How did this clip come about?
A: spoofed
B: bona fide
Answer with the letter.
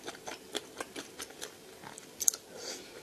B